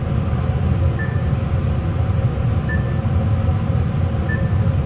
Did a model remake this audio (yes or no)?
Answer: no